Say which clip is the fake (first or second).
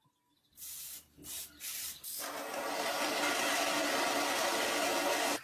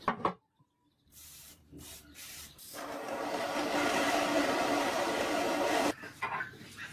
second